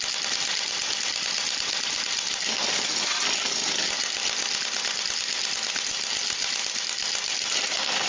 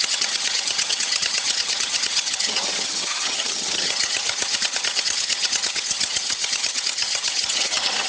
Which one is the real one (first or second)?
first